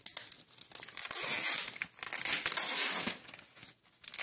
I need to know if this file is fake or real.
real